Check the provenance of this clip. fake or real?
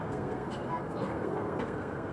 fake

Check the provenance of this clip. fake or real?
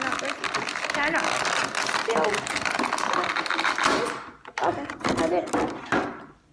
real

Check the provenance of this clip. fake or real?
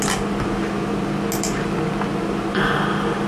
real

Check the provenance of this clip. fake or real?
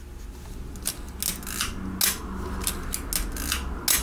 real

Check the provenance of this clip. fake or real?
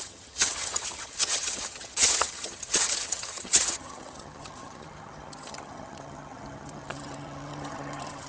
fake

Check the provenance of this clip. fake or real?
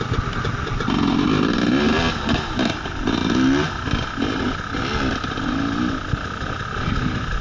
real